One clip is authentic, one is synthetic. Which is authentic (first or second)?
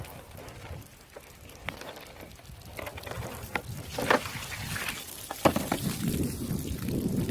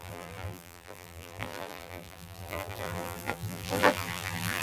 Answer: first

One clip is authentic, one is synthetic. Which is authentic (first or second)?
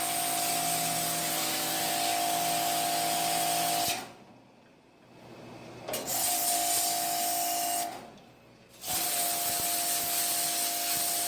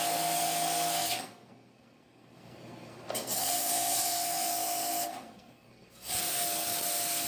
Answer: first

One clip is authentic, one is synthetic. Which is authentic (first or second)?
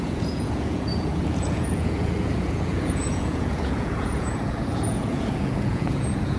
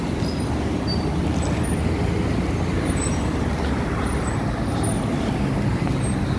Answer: second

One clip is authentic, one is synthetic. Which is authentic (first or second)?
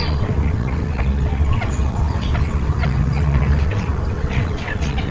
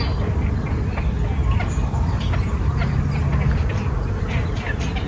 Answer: second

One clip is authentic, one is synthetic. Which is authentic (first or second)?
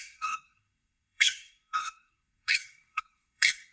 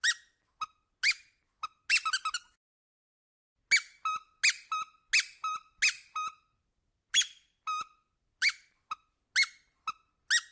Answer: second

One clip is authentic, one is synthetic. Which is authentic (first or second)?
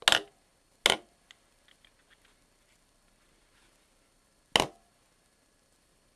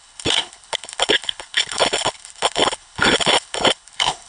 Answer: first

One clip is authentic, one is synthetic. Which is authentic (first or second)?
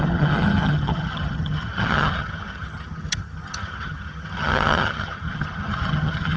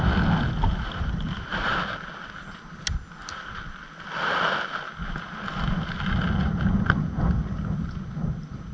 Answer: second